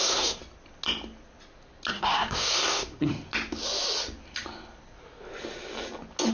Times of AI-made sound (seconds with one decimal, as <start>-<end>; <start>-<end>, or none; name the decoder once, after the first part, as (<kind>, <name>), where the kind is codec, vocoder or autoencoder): 0.0-0.4 (codec, SNAC); 1.9-3.1